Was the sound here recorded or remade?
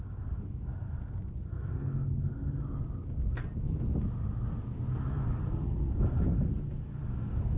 recorded